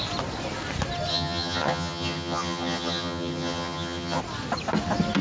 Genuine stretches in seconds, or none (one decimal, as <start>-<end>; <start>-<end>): 0.0-1.1; 4.2-5.2